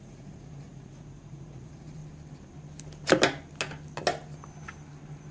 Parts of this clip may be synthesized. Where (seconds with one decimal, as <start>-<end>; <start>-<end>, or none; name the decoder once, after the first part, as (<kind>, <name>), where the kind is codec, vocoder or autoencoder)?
0.0-2.0 (vocoder, Vocos)